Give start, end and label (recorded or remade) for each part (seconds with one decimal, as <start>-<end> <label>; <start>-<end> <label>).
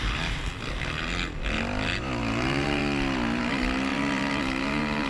0.0-0.5 remade; 0.5-2.2 recorded; 2.2-2.8 remade; 2.8-3.4 recorded; 3.4-5.1 remade